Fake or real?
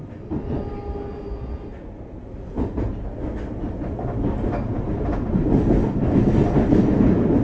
real